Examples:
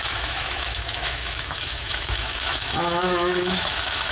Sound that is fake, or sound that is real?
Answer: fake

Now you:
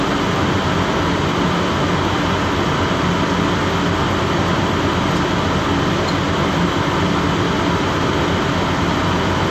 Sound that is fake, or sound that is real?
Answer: real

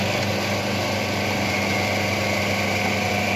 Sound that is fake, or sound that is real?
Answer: real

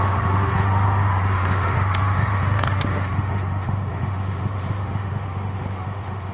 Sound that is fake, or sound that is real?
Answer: fake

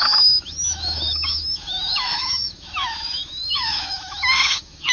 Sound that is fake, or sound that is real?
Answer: fake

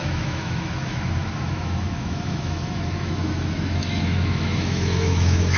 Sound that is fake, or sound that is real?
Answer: fake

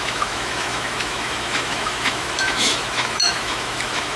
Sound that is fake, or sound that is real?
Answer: fake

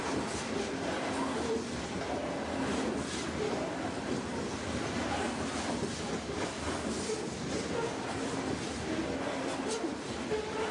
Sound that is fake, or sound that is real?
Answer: real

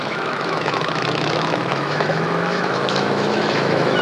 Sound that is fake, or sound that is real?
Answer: fake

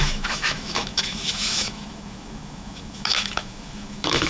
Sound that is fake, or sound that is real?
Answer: fake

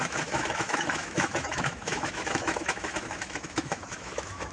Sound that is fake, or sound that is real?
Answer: fake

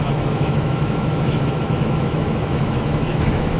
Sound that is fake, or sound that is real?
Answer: fake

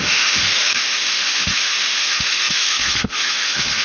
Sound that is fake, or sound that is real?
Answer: fake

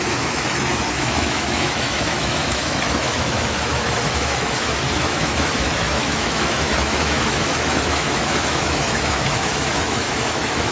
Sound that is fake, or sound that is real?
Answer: fake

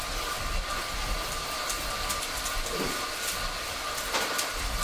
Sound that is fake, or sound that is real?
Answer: real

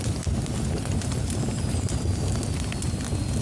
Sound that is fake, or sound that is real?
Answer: real